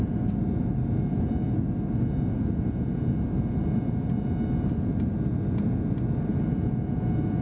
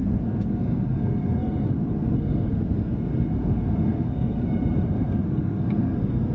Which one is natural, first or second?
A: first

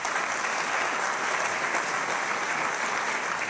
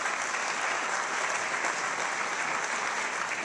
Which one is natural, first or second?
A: first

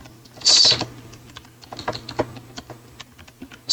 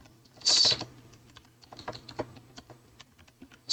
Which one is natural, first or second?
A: first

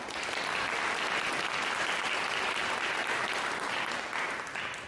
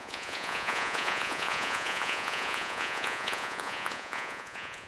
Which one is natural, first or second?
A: first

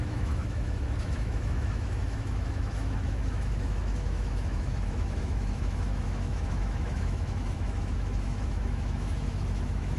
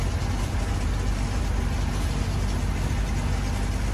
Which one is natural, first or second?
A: second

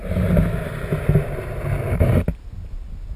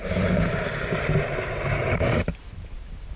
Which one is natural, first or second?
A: first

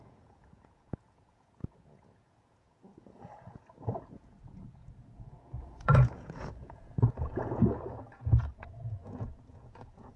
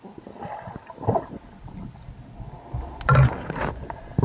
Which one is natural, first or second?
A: second